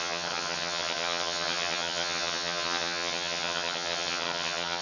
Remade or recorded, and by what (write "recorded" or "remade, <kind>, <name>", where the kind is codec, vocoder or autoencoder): remade, vocoder, HiFi-GAN